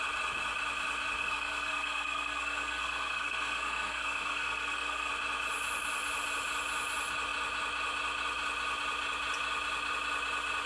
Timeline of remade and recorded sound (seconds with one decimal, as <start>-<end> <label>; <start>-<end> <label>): 0.0-1.2 recorded; 1.2-5.1 remade; 5.1-10.7 recorded